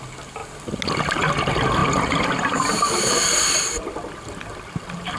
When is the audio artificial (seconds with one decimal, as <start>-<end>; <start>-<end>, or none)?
1.8-4.7